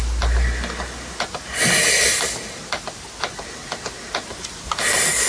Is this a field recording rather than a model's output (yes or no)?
yes